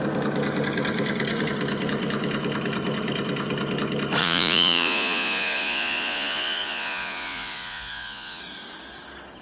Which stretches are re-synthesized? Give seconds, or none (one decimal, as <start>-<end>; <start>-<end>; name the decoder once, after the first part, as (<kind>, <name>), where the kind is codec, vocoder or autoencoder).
4.2-8.4 (vocoder, Vocos)